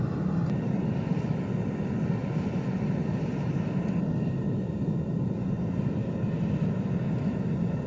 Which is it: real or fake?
real